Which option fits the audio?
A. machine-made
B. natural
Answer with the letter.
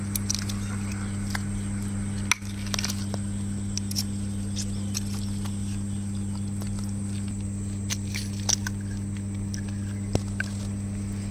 B